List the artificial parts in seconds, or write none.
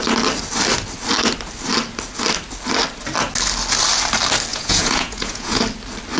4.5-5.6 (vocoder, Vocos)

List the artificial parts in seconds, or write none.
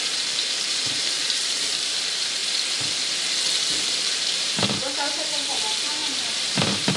0.0-2.4 (vocoder, BigVGAN v2); 3.8-7.0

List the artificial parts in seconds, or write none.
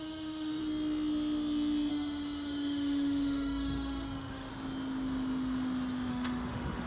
0.0-0.6 (autoencoder, DAC-VAE); 1.9-4.5; 6.1-6.9